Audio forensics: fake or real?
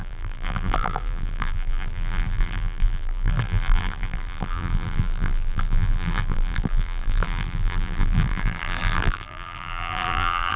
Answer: fake